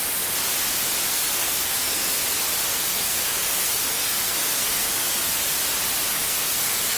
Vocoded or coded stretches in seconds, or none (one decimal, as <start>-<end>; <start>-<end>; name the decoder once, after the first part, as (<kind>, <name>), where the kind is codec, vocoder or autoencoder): 1.1-2.2 (codec, SNAC); 2.7-5.3; 6.1-7.0